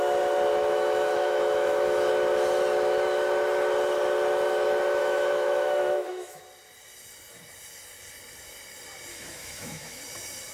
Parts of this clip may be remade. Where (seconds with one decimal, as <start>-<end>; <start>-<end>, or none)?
0.7-2.1; 5.0-6.4; 9.1-10.0